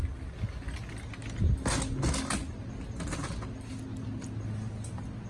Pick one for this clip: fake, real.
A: real